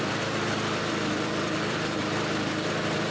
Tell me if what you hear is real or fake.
fake